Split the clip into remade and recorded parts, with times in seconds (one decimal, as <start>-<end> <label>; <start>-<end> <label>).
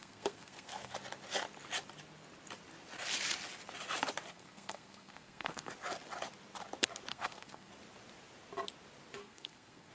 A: 0.0-1.0 remade; 1.0-4.3 recorded; 4.3-5.7 remade; 5.7-7.1 recorded; 7.1-7.7 remade; 7.7-9.2 recorded; 9.2-9.9 remade